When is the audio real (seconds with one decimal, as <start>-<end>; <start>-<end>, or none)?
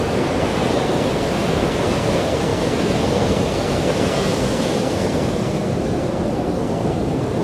none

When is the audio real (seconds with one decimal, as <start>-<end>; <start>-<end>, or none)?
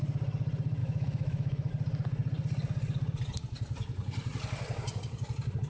0.0-0.8; 1.7-5.7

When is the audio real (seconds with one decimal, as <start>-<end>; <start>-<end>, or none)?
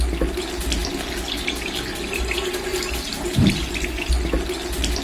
0.0-2.7; 3.7-5.0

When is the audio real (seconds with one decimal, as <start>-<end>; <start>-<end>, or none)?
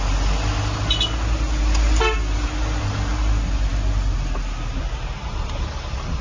0.0-6.2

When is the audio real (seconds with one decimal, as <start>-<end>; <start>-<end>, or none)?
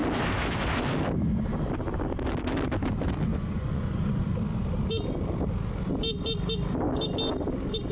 0.0-3.3; 4.2-7.9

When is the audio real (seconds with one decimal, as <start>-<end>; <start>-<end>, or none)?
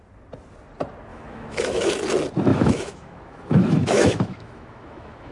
0.0-1.1; 1.9-2.5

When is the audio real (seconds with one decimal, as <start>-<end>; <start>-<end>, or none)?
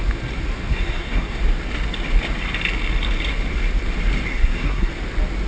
0.0-0.7; 1.4-4.3; 4.9-5.5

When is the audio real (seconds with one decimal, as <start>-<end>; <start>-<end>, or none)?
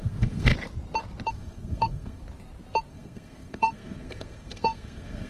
0.5-1.3; 2.2-2.9